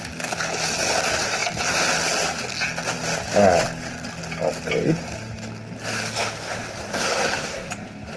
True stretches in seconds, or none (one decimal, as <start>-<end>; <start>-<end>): 0.0-6.9; 7.7-8.2